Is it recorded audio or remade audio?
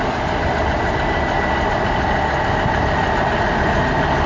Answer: recorded